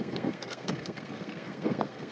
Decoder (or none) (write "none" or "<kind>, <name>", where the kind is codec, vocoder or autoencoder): codec, SNAC